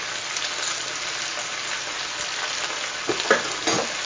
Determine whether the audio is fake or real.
real